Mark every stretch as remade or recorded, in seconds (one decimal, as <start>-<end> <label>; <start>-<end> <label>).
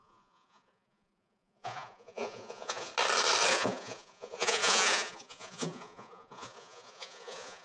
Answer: 0.0-2.9 remade; 2.9-3.5 recorded; 3.5-7.6 remade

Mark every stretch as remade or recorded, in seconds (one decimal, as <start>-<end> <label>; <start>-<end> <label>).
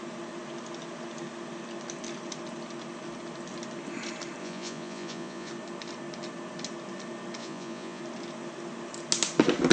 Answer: 0.0-4.4 recorded; 4.4-5.5 remade; 5.5-7.4 recorded; 7.4-8.0 remade; 8.0-9.7 recorded